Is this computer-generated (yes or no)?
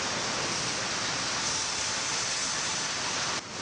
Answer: no